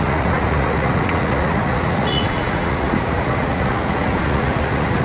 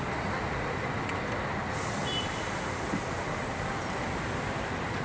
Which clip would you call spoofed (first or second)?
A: first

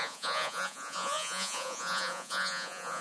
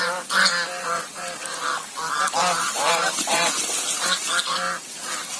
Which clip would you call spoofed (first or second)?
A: first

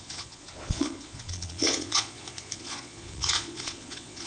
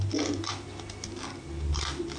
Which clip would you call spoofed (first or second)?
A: first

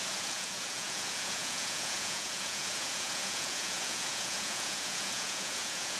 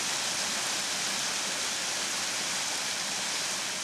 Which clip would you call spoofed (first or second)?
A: first